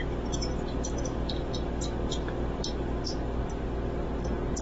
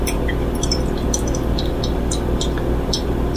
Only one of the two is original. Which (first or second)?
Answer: first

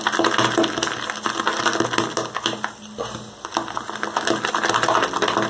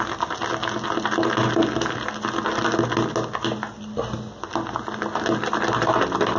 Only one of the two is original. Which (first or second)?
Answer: second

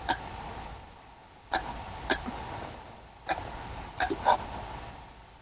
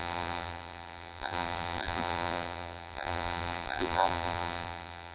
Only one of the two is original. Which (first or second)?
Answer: first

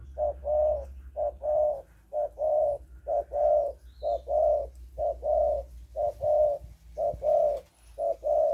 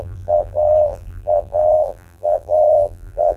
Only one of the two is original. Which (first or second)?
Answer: first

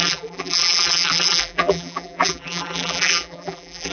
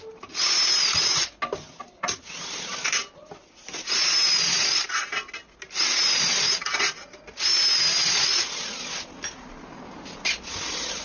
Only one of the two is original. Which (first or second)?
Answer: second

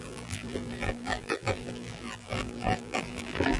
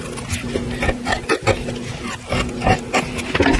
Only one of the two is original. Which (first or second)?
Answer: second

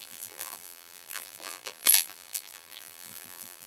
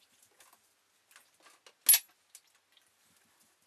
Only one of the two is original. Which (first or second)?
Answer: second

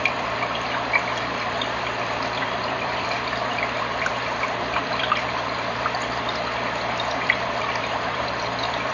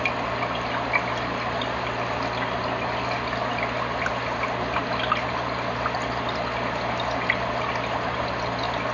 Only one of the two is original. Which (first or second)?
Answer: second